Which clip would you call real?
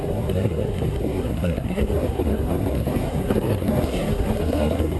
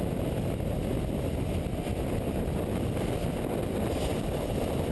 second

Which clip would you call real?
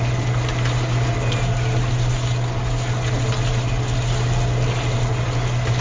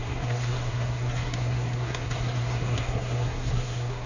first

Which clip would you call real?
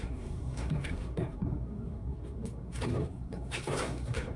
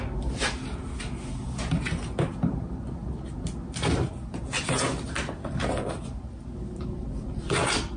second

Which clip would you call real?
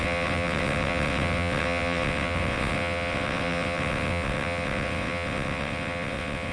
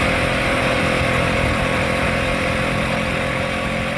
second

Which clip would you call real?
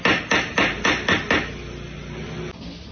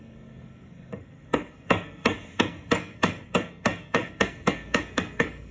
first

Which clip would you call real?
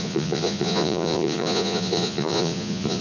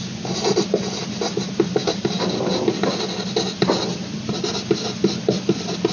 second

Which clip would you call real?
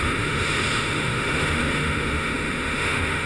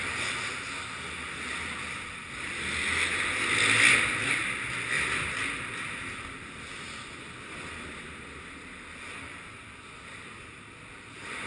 second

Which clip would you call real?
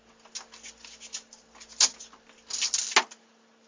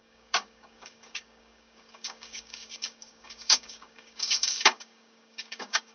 first